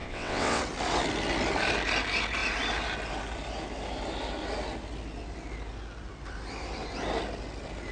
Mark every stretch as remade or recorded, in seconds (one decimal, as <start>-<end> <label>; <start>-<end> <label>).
0.0-0.6 remade; 0.6-7.9 recorded